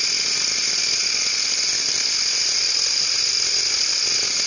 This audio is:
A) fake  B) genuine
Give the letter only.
B